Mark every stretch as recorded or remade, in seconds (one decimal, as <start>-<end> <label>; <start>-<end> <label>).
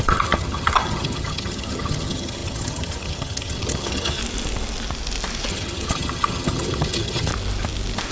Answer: 0.0-4.2 remade; 4.2-5.5 recorded; 5.5-7.3 remade; 7.3-8.1 recorded